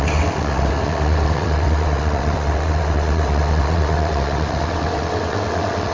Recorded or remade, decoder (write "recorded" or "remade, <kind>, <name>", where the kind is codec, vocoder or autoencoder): remade, vocoder, WaveNeXt